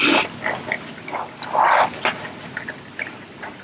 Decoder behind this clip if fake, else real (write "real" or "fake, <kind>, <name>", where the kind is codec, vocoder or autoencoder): real